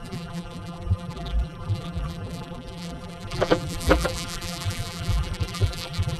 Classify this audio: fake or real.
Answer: fake